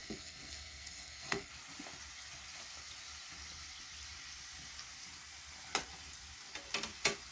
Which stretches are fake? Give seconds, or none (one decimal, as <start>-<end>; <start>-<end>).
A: 0.0-1.5